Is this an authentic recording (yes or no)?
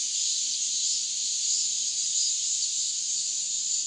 no